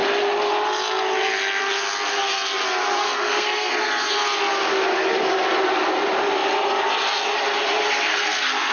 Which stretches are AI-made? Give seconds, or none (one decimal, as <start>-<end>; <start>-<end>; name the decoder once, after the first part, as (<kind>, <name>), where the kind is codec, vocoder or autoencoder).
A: 3.0-3.7 (codec, SNAC); 8.1-8.7